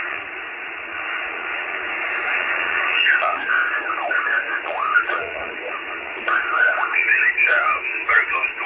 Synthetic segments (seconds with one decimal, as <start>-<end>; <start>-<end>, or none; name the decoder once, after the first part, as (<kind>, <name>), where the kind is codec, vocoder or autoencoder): 0.0-8.7 (vocoder, Vocos)